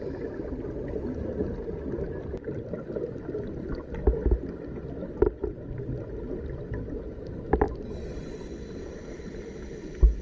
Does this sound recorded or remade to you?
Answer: recorded